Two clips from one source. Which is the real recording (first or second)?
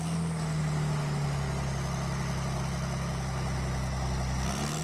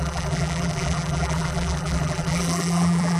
first